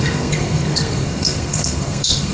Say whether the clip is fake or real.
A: fake